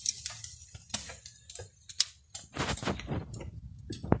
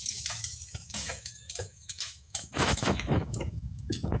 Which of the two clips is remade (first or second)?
second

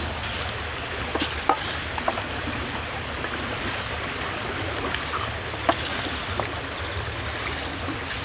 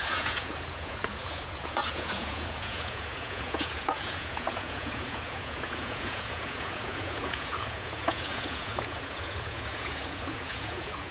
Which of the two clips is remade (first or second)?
second